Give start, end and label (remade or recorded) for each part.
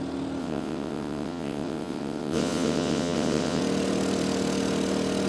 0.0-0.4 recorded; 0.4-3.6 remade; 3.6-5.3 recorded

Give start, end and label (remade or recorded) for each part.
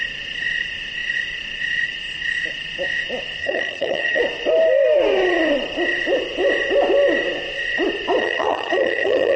0.0-3.4 recorded; 3.4-4.2 remade; 4.2-8.2 recorded; 8.2-9.4 remade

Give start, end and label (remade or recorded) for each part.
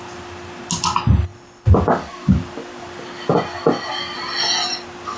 0.0-1.3 recorded; 1.3-3.3 remade; 3.3-5.2 recorded